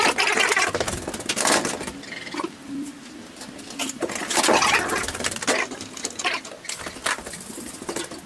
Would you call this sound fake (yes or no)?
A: no